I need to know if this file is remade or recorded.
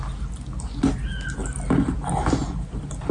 recorded